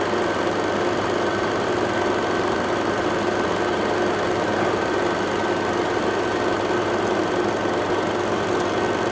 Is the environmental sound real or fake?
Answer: real